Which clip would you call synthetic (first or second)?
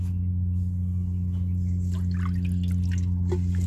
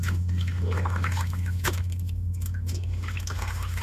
second